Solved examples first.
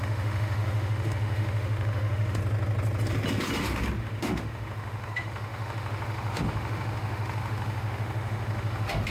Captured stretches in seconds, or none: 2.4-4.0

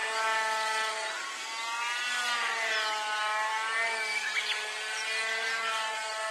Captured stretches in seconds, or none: 0.0-6.3

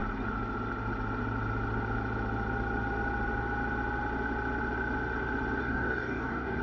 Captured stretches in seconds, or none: 0.0-5.6

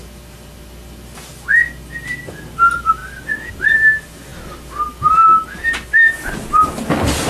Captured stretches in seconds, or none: 0.0-7.3

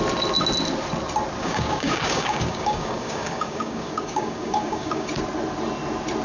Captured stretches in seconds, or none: 0.0-1.4; 5.1-6.2

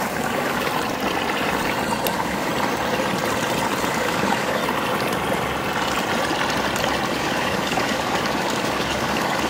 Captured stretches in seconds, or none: 0.7-2.1; 2.5-3.9; 4.6-7.1

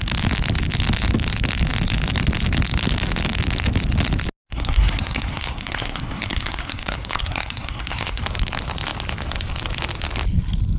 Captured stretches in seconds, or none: 0.0-4.5; 8.2-10.8